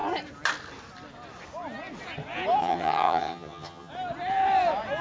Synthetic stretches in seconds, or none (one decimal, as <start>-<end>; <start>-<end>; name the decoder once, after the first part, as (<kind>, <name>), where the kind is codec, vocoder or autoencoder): 2.6-3.9 (vocoder, HiFi-GAN)